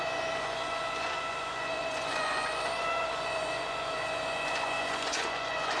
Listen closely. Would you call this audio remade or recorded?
remade